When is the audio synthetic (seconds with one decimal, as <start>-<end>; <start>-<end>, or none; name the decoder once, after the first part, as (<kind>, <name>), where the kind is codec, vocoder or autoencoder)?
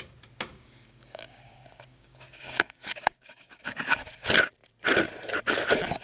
0.5-3.8 (codec, DAC)